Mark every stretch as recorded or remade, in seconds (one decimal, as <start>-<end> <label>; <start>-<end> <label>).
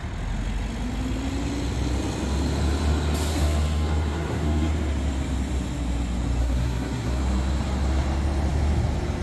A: 0.0-3.3 recorded; 3.3-4.7 remade; 4.7-6.4 recorded; 6.4-7.2 remade; 7.2-9.2 recorded